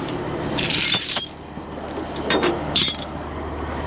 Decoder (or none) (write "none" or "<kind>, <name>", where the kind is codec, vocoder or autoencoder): vocoder, BigVGAN v2